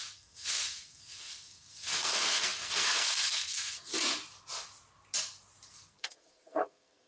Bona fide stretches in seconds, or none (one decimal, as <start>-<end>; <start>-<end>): 3.9-5.7